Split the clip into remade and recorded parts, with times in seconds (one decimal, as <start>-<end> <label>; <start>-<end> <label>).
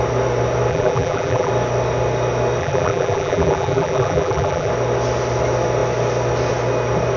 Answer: 0.0-0.7 recorded; 0.7-1.5 remade; 1.5-2.6 recorded; 2.6-4.7 remade; 4.7-7.2 recorded